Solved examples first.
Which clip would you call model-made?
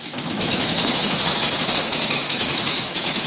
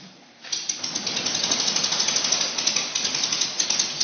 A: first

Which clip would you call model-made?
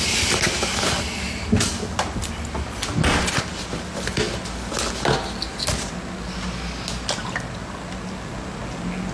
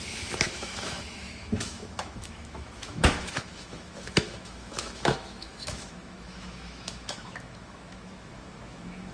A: second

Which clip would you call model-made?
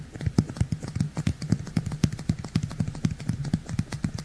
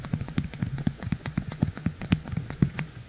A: second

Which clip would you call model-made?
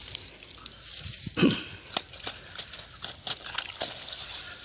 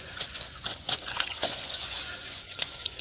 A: second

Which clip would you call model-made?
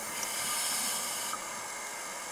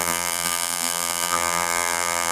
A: second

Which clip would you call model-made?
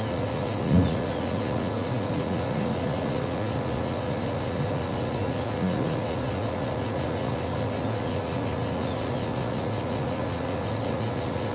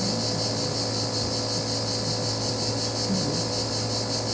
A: first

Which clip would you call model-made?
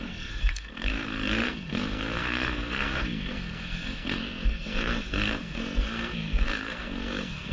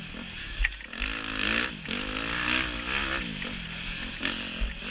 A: first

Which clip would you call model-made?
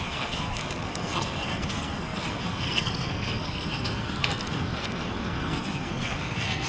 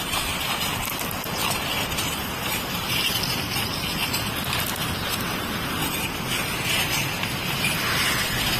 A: first